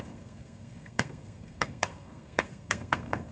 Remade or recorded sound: remade